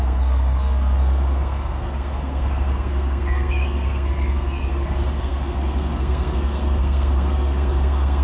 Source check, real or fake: fake